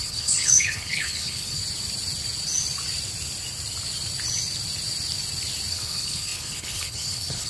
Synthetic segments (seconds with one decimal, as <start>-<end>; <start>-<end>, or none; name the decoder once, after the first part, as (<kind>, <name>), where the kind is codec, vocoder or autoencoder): 0.0-1.6 (codec, HILCodec); 5.7-7.5